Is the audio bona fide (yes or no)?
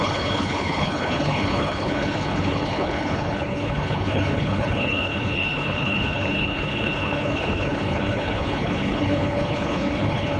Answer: no